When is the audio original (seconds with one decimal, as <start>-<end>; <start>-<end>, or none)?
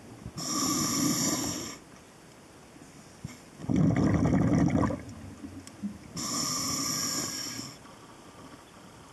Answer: 0.0-9.1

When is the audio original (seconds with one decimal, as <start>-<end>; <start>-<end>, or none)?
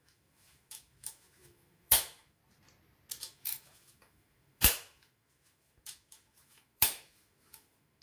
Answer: 2.4-3.2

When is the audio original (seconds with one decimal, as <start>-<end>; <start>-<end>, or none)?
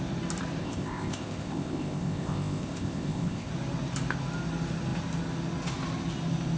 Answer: 0.0-0.6; 3.5-6.6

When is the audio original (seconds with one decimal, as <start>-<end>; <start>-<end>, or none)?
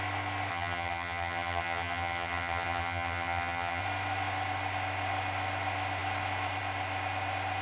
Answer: 0.0-0.5; 3.8-7.6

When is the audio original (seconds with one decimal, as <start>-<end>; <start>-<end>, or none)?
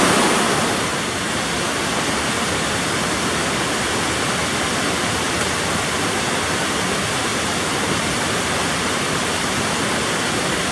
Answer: 0.0-10.7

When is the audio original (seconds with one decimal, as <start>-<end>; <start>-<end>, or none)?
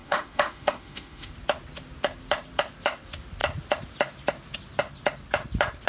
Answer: 1.3-5.9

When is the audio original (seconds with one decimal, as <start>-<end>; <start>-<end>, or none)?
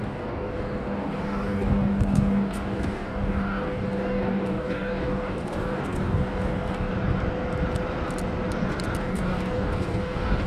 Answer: 6.9-9.0